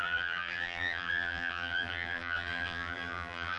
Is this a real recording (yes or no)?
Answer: no